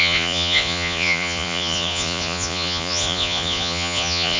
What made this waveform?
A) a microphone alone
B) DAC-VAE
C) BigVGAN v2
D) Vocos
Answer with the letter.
D